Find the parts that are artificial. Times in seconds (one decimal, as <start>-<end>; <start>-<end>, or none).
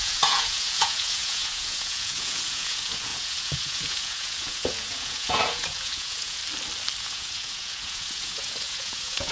0.0-6.4; 7.0-9.3